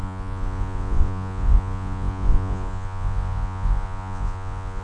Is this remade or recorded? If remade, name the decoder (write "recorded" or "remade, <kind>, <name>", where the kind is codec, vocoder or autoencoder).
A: remade, vocoder, Vocos